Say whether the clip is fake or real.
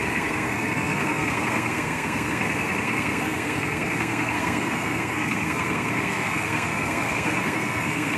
fake